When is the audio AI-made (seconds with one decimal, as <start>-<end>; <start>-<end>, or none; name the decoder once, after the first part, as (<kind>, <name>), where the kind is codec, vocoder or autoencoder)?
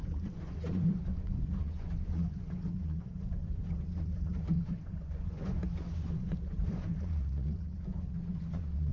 0.0-8.9 (vocoder, Vocos)